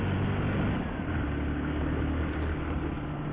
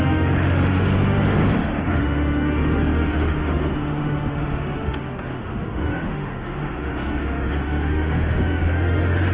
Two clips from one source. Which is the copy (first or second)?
second